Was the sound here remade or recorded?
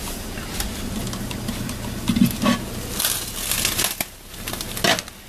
recorded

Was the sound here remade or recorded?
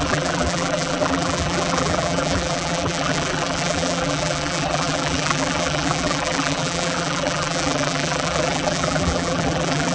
remade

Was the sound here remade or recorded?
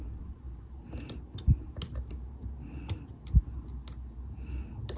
recorded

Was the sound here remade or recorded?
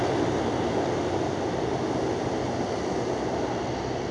recorded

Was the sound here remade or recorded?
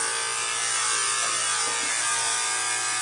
recorded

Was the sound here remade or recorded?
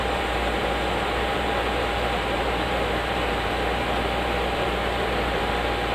remade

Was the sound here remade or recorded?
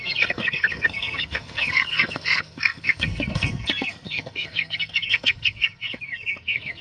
remade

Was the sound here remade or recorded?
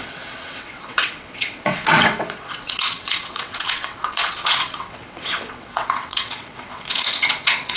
remade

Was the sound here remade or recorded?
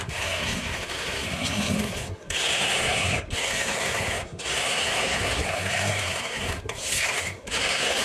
remade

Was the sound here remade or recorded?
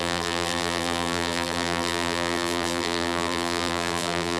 remade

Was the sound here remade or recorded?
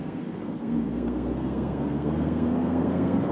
remade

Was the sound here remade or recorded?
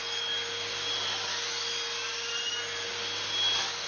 recorded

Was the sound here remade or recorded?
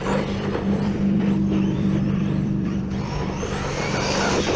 remade